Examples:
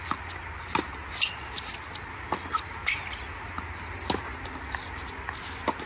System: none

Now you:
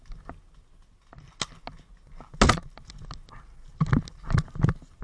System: none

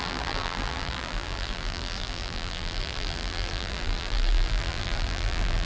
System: vocoder, BigVGAN v2